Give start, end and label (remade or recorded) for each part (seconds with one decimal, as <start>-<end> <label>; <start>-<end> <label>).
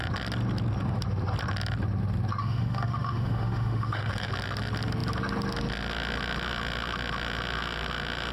0.0-2.4 recorded; 2.4-4.3 remade; 4.3-8.3 recorded